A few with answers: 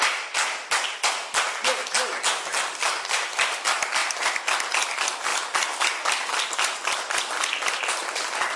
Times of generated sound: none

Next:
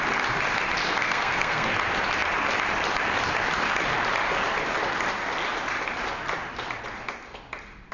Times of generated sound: 1.0-1.7 (codec, SNAC)

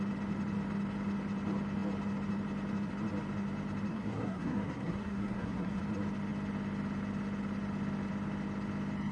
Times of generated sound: 3.9-5.8 (codec, SNAC)

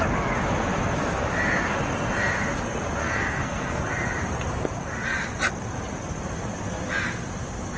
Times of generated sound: 3.0-3.8 (codec, SNAC)

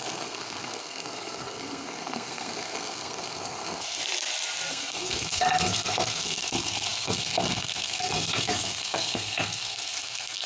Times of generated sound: 0.0-4.0 (codec, SNAC); 4.7-10.5

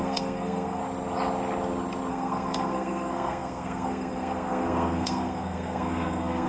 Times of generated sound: 0.0-0.8 (codec, SNAC); 2.1-6.5

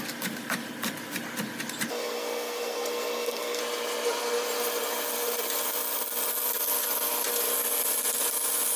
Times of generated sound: 1.9-3.6 (codec, SNAC)